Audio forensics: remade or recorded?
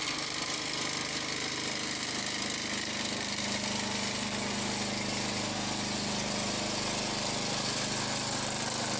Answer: recorded